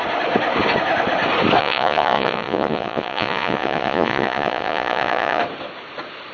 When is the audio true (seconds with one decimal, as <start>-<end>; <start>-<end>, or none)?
0.0-1.6; 5.4-6.3